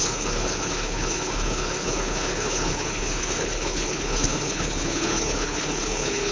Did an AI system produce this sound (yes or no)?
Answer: yes